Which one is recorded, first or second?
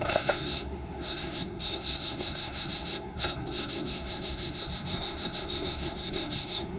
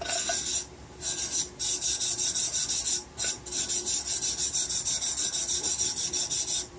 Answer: second